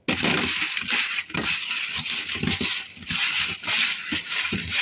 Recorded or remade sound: recorded